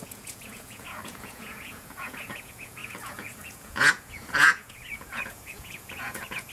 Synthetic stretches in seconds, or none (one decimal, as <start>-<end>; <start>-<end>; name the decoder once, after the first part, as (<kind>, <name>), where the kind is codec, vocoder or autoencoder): 0.0-6.5 (vocoder, Vocos)